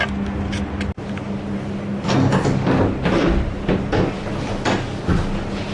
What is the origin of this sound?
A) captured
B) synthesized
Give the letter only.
A